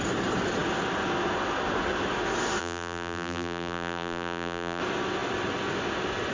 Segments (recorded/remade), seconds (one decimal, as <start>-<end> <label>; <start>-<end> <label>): 0.0-2.6 recorded; 2.6-4.8 remade; 4.8-6.3 recorded